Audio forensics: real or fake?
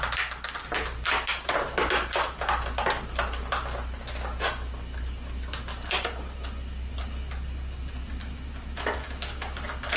real